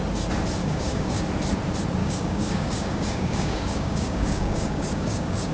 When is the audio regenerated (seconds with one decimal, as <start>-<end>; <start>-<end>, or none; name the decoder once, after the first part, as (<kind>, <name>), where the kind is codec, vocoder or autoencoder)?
0.6-1.2 (codec, DAC); 2.0-5.5